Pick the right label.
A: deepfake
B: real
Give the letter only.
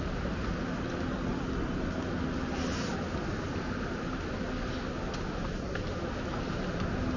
B